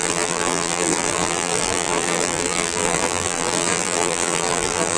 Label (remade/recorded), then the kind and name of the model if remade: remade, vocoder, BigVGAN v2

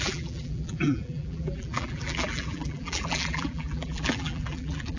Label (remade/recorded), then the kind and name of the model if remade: remade, vocoder, BigVGAN v2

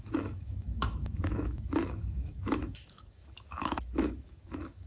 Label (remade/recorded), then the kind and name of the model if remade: remade, autoencoder, DAC-VAE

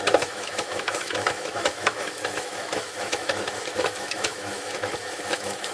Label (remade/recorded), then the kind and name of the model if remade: remade, autoencoder, DAC-VAE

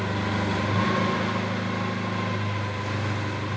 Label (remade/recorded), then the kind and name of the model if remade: recorded